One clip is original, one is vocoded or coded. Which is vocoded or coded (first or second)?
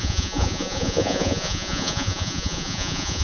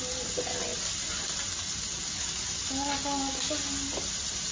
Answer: first